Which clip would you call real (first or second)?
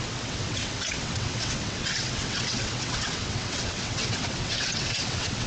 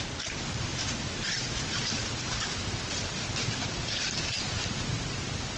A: second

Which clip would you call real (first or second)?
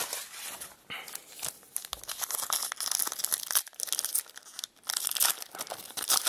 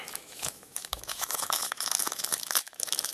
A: first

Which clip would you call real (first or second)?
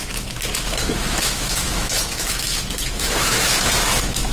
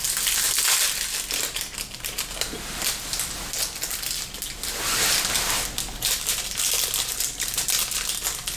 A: second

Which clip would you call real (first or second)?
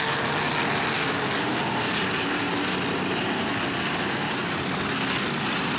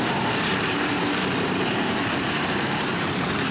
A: first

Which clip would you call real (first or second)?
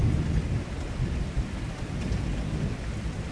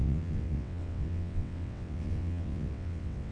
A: first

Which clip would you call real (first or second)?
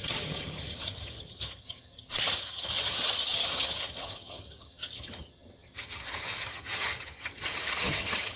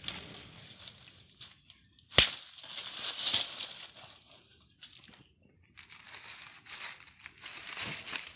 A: second